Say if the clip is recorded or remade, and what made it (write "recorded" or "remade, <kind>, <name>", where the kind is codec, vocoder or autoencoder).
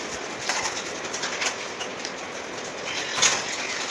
recorded